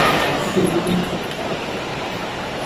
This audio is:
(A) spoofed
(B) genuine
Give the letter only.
A